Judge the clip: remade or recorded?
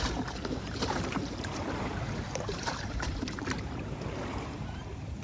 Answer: remade